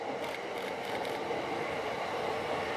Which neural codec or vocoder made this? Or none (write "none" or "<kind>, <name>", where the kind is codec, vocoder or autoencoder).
none